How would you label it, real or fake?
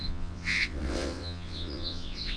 fake